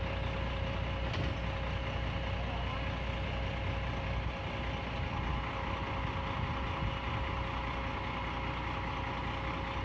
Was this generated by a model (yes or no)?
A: no